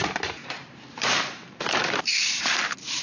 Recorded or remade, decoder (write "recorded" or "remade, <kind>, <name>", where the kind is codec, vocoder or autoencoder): remade, vocoder, BigVGAN v2